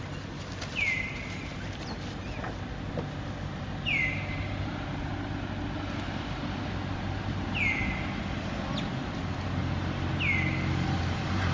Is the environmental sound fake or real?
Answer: real